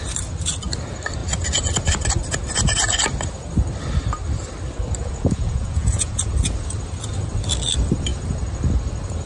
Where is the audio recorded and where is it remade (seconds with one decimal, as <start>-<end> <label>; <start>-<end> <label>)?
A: 0.0-5.0 recorded; 5.0-6.3 remade; 6.3-9.3 recorded